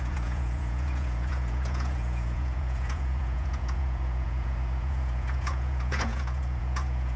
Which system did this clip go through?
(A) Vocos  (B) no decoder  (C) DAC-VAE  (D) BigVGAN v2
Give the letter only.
A